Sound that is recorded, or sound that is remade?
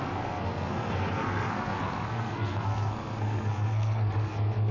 remade